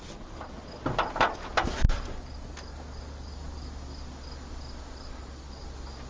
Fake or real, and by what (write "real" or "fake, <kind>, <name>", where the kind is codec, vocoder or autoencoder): real